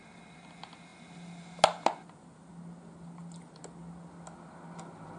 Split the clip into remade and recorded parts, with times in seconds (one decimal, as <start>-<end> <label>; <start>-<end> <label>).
0.0-5.2 recorded